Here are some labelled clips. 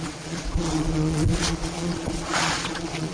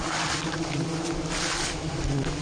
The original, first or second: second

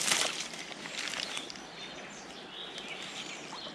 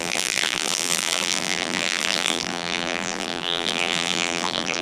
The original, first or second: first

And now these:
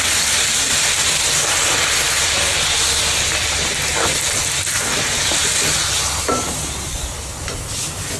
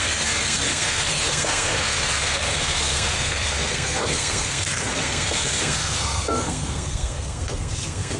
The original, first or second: first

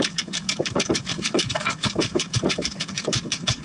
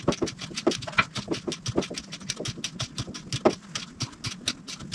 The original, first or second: second